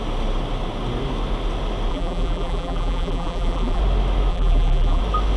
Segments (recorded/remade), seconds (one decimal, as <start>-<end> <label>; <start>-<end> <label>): 0.0-1.9 recorded; 1.9-3.8 remade; 3.8-4.3 recorded; 4.3-5.0 remade; 5.0-5.4 recorded